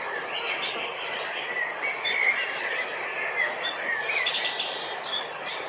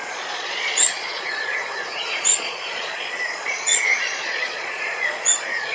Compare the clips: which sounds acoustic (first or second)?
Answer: first